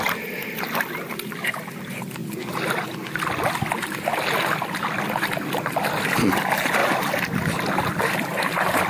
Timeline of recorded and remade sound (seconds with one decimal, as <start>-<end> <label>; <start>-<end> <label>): 0.0-8.9 recorded